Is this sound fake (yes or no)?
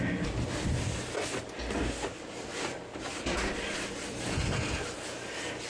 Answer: no